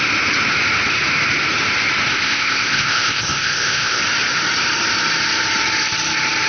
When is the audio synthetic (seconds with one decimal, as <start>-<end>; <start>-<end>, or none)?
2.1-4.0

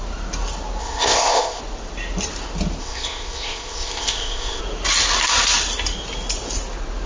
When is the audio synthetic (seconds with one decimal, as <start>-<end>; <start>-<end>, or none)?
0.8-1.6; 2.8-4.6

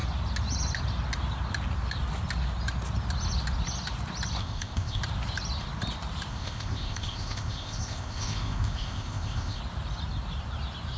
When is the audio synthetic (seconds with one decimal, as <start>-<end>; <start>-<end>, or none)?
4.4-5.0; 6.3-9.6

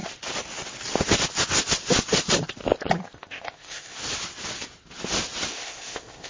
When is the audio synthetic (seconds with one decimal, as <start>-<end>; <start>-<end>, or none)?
3.0-4.0; 5.5-6.3

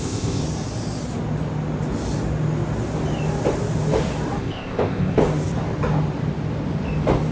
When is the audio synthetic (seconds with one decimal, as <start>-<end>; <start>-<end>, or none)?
0.0-0.4; 4.4-5.2

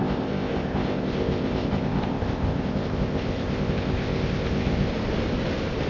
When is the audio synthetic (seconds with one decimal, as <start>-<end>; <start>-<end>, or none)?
0.0-4.9

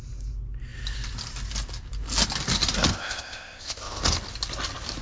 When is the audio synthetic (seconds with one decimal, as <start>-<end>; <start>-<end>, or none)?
2.9-4.0